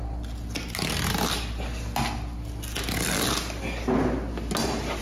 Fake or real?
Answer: real